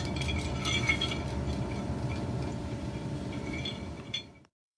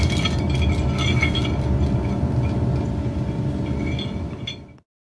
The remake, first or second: first